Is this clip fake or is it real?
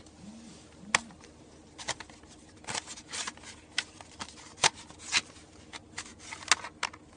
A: real